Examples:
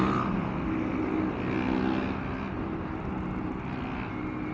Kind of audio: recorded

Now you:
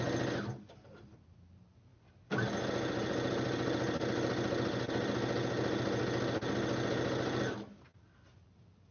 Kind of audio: recorded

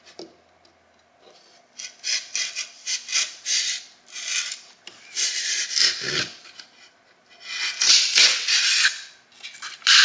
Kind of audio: recorded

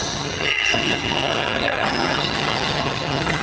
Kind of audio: remade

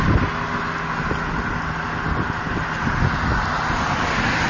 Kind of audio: recorded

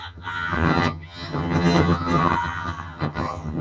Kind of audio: remade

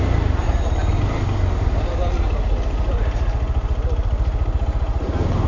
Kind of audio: recorded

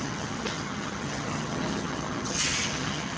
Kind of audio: remade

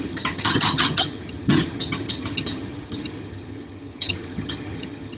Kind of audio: remade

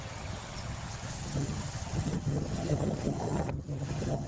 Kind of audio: remade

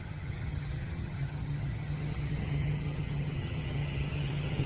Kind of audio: remade